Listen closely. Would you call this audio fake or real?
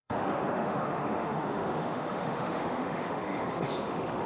fake